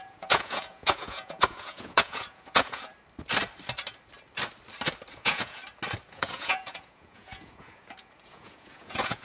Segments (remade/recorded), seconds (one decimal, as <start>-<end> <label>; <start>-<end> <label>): 0.0-2.9 remade; 2.9-5.1 recorded; 5.1-5.6 remade; 5.6-6.1 recorded; 6.1-9.2 remade